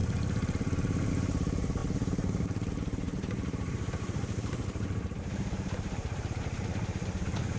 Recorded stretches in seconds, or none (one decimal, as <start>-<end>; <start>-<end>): 0.0-1.8; 6.4-7.6